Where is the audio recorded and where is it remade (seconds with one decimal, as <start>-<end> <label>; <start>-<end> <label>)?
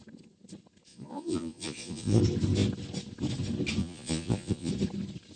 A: 0.0-0.9 recorded; 0.9-2.2 remade; 2.2-3.8 recorded; 3.8-4.7 remade; 4.7-5.4 recorded